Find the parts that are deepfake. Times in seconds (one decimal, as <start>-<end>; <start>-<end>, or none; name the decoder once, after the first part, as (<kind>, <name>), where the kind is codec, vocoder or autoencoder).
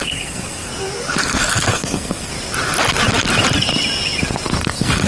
0.0-0.7 (codec, SNAC); 1.2-2.3; 4.6-5.1